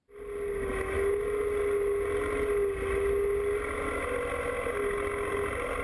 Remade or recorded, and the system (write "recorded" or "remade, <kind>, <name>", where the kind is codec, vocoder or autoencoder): recorded